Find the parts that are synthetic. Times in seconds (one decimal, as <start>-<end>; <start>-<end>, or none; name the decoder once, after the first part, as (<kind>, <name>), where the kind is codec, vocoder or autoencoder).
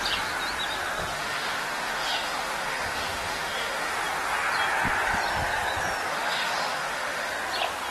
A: 1.1-3.9 (autoencoder, DAC-VAE); 6.1-7.3